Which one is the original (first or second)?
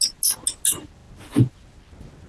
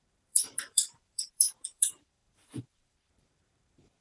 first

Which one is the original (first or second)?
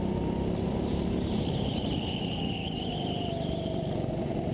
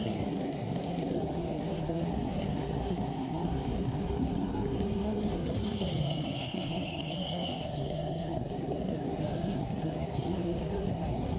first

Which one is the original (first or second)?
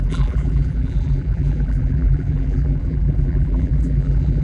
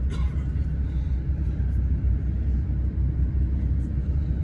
second